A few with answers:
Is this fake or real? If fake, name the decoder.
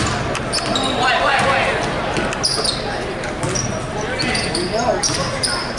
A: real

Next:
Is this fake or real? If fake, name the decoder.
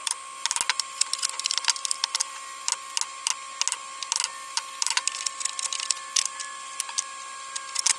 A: real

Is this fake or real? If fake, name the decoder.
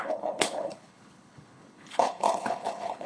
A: fake, codec, HILCodec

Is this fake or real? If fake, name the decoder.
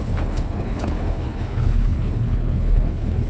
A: fake, codec, HILCodec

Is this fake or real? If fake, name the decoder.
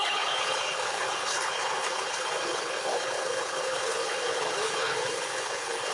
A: fake, codec, HILCodec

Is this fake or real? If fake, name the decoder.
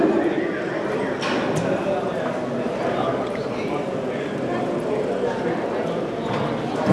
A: real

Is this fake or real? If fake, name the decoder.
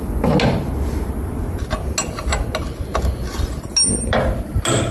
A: real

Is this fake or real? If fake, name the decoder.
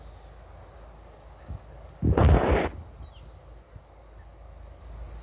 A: real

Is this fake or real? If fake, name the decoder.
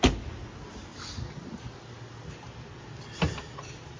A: real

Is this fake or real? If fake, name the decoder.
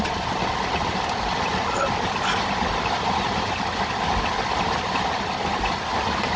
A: real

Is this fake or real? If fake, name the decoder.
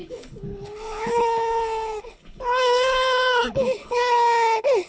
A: fake, codec, HILCodec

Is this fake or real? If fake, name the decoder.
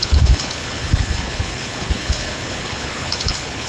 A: fake, codec, HILCodec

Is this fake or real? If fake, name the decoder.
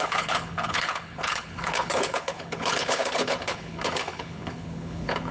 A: fake, codec, HILCodec